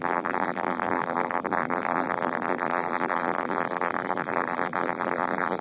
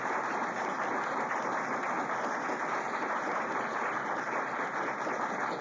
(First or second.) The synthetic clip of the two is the first